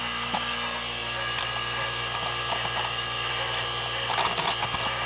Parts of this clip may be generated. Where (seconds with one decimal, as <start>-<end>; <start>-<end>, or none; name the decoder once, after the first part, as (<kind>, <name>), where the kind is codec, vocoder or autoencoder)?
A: none